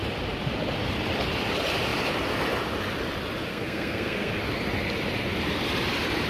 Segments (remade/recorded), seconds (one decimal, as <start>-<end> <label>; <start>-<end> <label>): 0.0-3.5 recorded; 3.5-4.4 remade; 4.4-6.3 recorded